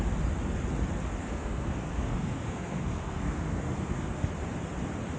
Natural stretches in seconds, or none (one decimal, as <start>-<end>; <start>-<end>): 0.0-1.2; 4.3-5.2